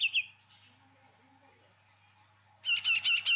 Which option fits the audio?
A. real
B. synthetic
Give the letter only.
A